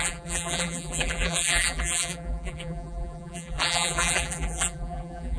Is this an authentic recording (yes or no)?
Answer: no